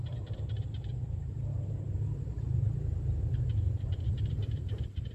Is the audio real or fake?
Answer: fake